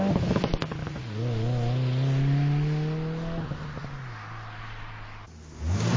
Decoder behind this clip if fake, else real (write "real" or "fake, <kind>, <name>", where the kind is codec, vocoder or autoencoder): real